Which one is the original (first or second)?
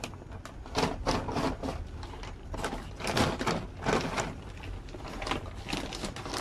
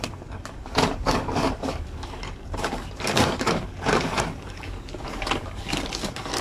first